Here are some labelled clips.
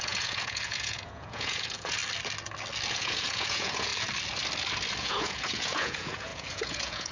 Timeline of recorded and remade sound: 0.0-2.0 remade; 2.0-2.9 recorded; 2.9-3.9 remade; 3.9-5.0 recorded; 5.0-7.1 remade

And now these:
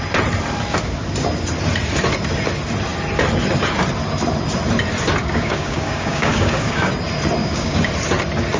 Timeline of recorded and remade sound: 0.0-5.2 recorded; 5.2-6.9 remade; 6.9-7.4 recorded; 7.4-7.9 remade; 7.9-8.6 recorded

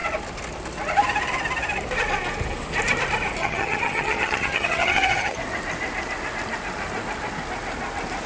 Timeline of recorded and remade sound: 0.0-3.4 recorded; 3.4-5.4 remade; 5.4-8.3 recorded

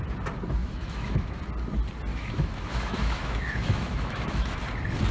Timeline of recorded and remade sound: 0.0-0.6 recorded; 0.6-1.4 remade; 1.4-2.1 recorded; 2.1-4.6 remade; 4.6-5.1 recorded

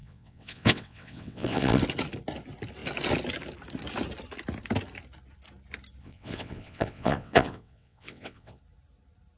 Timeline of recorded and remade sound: 0.0-1.8 remade; 1.8-6.0 recorded; 6.0-8.6 remade; 8.6-9.4 recorded

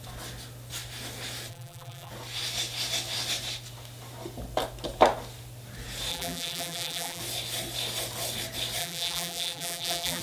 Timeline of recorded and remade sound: 0.0-1.5 recorded; 1.5-2.1 remade; 2.1-6.1 recorded; 6.1-7.2 remade; 7.2-8.8 recorded; 8.8-10.2 remade

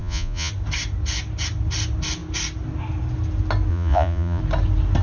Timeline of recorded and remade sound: 0.0-0.5 remade; 0.5-3.7 recorded; 3.7-4.4 remade; 4.4-5.0 recorded